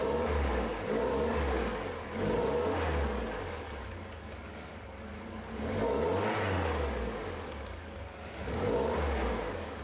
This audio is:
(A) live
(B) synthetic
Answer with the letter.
B